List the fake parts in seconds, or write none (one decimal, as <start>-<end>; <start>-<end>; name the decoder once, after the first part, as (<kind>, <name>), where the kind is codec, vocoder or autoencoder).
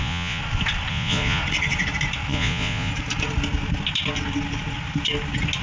0.0-0.4 (vocoder, Vocos); 0.9-1.4; 2.3-2.9